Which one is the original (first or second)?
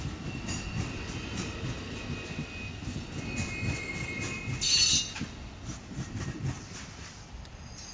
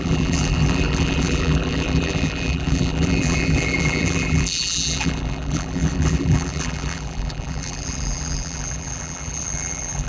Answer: first